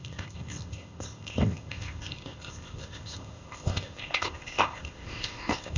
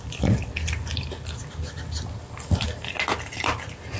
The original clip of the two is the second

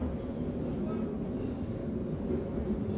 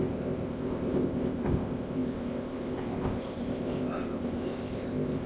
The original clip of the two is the first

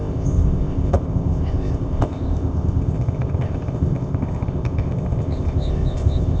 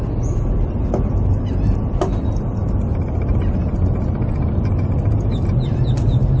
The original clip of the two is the second